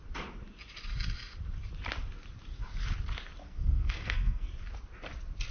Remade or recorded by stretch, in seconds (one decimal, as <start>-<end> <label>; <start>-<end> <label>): 0.0-3.4 recorded; 3.4-4.5 remade; 4.5-5.5 recorded